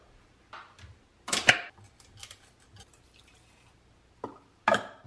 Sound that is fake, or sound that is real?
real